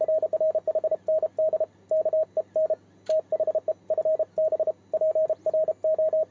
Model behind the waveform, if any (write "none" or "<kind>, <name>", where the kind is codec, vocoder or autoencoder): none